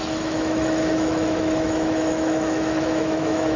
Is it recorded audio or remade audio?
remade